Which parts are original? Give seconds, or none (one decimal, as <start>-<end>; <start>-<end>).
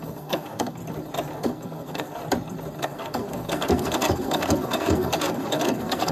0.8-1.3; 2.2-2.8